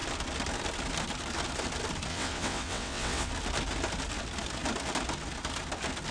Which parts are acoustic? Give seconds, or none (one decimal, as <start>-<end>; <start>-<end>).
0.0-2.1; 3.3-6.1